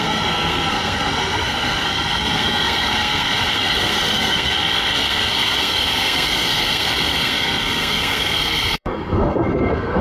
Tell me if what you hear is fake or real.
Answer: fake